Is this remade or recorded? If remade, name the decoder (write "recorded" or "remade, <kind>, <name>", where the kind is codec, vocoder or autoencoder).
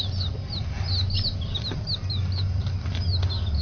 recorded